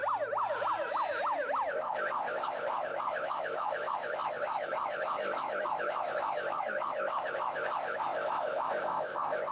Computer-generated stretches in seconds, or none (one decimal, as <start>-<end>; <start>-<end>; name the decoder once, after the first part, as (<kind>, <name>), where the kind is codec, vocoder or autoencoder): 1.7-9.5 (codec, ZipCodec)